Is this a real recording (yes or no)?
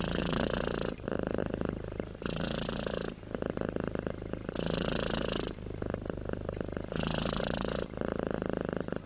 no